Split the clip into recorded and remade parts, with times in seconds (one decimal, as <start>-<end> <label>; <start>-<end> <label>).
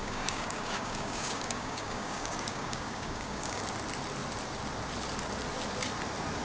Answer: 0.0-3.6 remade; 3.6-6.4 recorded